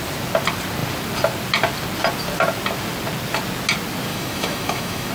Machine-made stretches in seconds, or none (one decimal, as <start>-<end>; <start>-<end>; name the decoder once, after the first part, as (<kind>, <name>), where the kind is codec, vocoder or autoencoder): 4.1-5.1 (autoencoder, DAC-VAE)